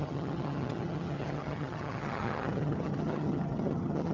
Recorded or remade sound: remade